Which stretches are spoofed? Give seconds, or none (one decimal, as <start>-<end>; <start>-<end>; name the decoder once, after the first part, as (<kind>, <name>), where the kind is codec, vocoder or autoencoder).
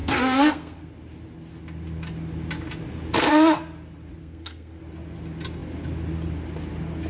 0.0-0.9 (codec, SNAC); 4.2-4.8